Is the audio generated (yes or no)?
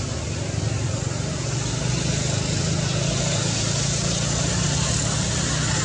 no